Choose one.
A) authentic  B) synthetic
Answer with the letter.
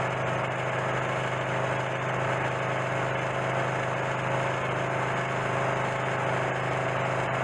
A